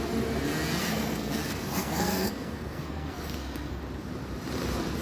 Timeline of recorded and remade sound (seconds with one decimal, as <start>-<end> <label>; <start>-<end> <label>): 0.0-0.8 recorded; 0.8-3.8 remade; 3.8-5.0 recorded